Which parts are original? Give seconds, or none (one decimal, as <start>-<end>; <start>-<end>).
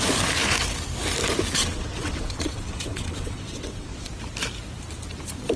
0.0-1.6; 4.1-5.6